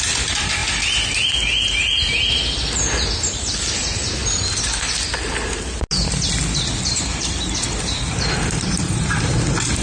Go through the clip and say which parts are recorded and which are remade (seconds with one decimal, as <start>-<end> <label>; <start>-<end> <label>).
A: 0.0-7.1 recorded; 7.1-9.3 remade; 9.3-9.8 recorded